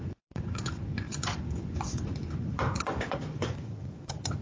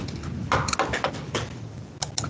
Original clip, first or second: second